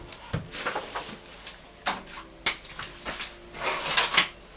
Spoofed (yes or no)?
no